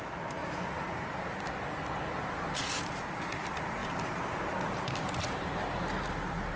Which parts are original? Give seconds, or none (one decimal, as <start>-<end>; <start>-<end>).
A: 0.4-2.2; 3.8-5.2